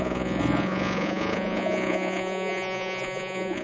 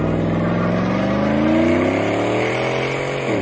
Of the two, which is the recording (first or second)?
second